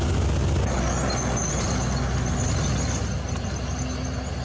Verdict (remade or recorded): recorded